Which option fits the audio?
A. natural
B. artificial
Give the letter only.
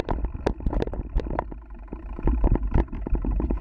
A